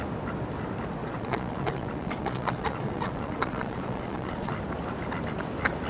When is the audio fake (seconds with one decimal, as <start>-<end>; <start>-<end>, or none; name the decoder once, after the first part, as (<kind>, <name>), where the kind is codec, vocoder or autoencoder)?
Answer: 1.0-4.5 (vocoder, Vocos)